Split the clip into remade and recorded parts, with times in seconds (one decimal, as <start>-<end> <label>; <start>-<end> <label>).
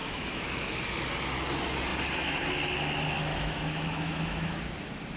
0.0-0.7 remade; 0.7-3.3 recorded; 3.3-4.6 remade; 4.6-5.2 recorded